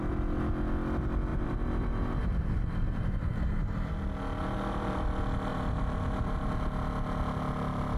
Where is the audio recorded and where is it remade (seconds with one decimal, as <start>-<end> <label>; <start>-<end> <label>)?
0.0-1.3 recorded; 1.3-3.6 remade; 3.6-4.4 recorded; 4.4-5.0 remade; 5.0-5.5 recorded; 5.5-6.5 remade; 6.5-8.0 recorded